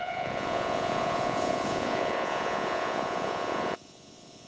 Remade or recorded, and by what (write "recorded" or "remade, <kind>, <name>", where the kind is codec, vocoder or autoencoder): remade, vocoder, Vocos